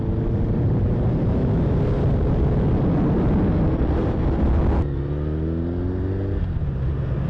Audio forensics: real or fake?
real